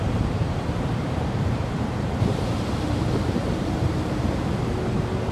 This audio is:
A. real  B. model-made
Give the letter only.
B